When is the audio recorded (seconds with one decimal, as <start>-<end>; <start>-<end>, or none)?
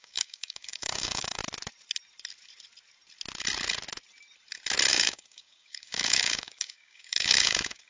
1.4-4.9